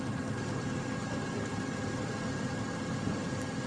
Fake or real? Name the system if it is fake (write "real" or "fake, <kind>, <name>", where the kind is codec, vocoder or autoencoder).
real